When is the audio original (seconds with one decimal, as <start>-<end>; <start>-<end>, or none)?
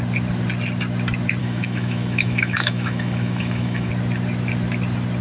0.0-1.4; 3.9-5.2